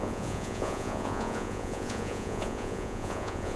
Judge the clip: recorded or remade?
remade